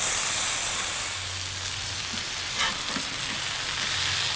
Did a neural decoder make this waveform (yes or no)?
no